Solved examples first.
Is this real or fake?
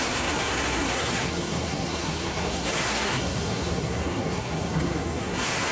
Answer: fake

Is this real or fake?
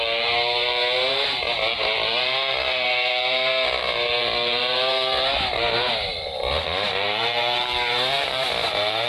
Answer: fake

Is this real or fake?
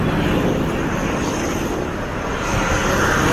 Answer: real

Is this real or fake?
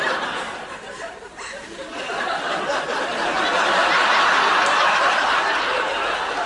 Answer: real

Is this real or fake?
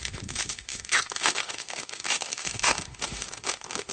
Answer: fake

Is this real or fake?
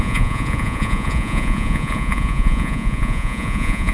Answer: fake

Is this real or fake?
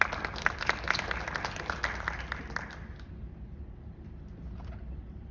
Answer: real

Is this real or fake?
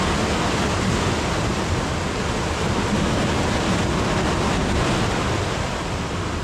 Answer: real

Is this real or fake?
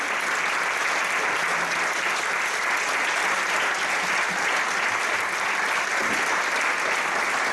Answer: real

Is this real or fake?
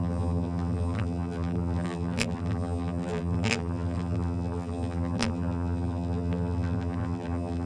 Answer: fake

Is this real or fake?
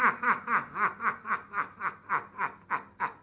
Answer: real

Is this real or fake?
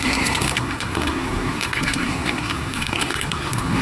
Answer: fake